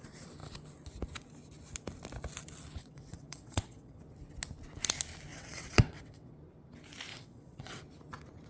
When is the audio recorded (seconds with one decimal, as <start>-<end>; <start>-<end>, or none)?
0.0-2.8; 4.0-5.3; 6.3-7.1; 7.8-8.5